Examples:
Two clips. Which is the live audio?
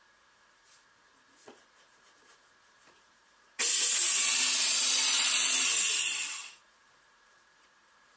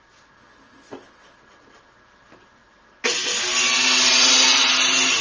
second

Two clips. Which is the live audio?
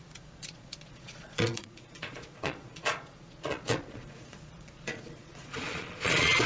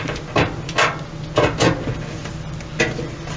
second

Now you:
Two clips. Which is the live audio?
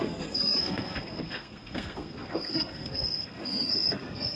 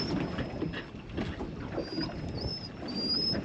second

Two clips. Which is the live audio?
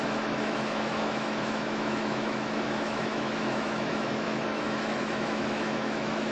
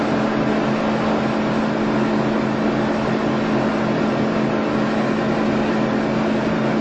second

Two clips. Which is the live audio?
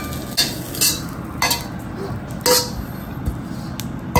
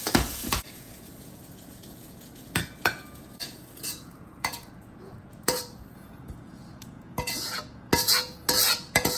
first